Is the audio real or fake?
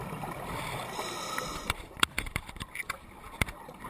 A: real